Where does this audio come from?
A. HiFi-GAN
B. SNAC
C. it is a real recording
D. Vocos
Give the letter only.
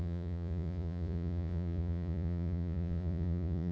D